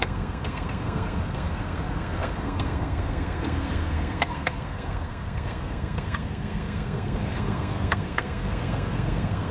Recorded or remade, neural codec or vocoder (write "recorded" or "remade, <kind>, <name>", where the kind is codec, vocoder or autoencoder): remade, codec, SNAC